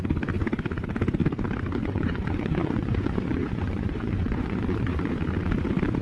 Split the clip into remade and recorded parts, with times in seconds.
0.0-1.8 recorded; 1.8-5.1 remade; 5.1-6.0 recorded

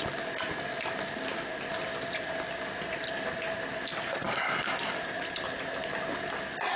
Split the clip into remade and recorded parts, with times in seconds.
0.0-6.8 recorded

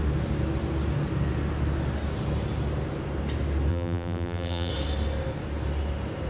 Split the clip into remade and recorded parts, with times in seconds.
0.0-3.7 recorded; 3.7-4.7 remade; 4.7-6.3 recorded

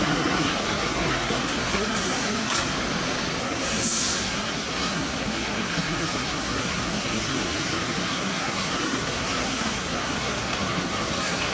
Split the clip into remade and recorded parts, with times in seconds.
0.0-2.7 remade; 2.7-3.4 recorded; 3.4-11.5 remade

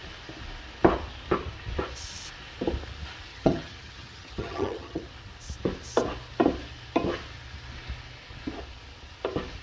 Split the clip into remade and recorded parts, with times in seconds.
0.0-3.3 recorded; 3.3-5.0 remade; 5.0-9.6 recorded

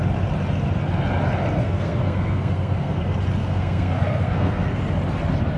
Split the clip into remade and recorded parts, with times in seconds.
0.0-1.6 recorded; 1.6-3.0 remade; 3.0-3.4 recorded; 3.4-4.8 remade; 4.8-5.6 recorded

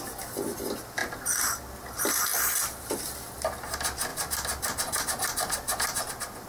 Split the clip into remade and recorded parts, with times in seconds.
0.0-2.3 recorded; 2.3-3.6 remade; 3.6-4.1 recorded; 4.1-6.1 remade; 6.1-6.5 recorded